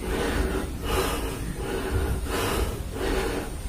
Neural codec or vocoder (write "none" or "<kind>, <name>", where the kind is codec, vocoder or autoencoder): none